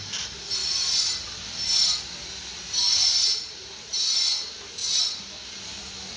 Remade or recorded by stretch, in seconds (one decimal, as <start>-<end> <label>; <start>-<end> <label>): 0.0-3.0 recorded; 3.0-4.0 remade; 4.0-6.2 recorded